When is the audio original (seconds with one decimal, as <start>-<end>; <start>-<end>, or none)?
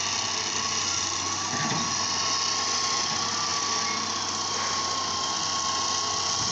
0.0-6.5